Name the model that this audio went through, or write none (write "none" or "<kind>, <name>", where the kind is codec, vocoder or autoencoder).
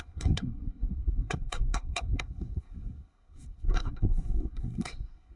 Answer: codec, SNAC